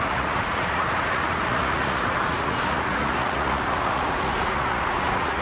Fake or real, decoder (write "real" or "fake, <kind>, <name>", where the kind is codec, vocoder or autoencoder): fake, vocoder, Vocos